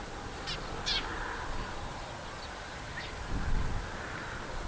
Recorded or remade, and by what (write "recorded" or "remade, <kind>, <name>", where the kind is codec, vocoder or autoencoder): recorded